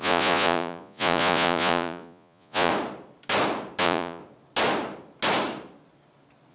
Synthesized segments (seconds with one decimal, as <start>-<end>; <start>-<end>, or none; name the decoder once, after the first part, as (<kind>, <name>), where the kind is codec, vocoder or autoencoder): 0.0-2.7 (vocoder, Vocos); 3.8-4.2